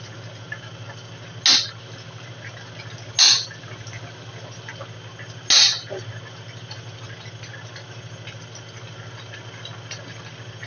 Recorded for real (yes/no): yes